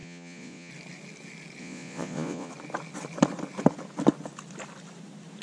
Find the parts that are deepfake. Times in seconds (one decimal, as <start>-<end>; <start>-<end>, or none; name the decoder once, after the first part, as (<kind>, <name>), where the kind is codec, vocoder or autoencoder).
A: 0.0-0.7 (vocoder, Vocos); 1.6-2.5